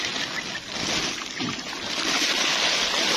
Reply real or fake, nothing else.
real